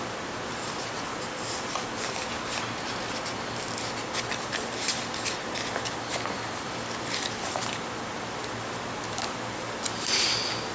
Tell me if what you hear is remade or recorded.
recorded